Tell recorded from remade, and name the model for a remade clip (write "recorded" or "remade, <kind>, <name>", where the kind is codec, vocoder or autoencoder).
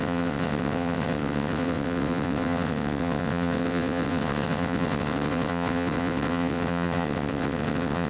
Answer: remade, vocoder, WaveNeXt